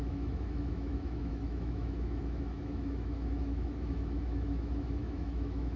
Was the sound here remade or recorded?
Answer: remade